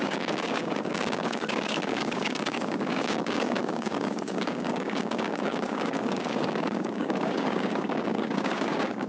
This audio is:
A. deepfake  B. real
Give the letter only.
A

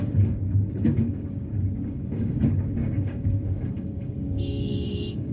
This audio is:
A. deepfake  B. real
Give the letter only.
A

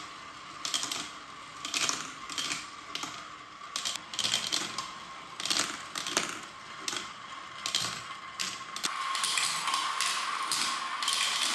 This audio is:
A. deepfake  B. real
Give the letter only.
B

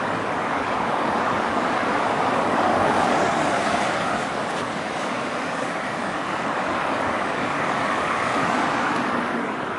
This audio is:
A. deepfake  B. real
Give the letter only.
A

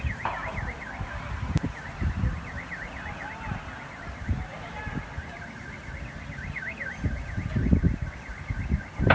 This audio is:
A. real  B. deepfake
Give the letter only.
A